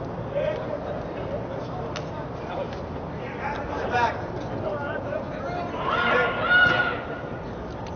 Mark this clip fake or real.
real